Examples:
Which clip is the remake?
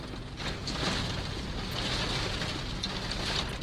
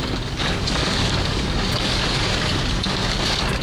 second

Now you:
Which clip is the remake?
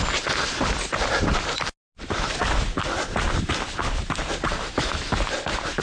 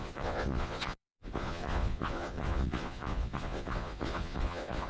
second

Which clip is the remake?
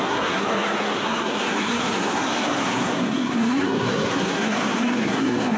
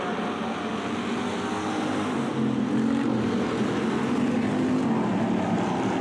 first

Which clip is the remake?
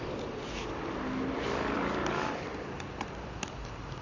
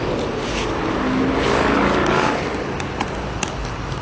first